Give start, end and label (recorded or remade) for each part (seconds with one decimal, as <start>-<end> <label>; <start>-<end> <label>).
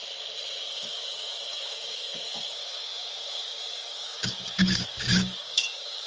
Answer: 0.0-0.6 recorded; 0.6-6.1 remade